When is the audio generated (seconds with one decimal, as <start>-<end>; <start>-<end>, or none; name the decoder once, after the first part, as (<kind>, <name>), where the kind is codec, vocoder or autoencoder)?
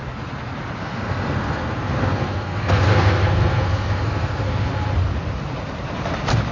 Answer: 0.8-4.7 (codec, SNAC)